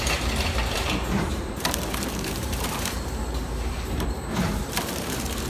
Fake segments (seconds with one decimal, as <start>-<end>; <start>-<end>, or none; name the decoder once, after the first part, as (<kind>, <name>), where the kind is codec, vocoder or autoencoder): 0.0-5.5 (vocoder, BigVGAN v2)